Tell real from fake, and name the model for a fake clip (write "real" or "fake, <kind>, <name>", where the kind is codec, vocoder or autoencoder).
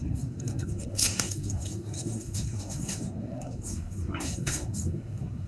fake, codec, SNAC